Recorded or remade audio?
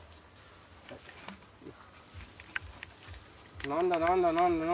recorded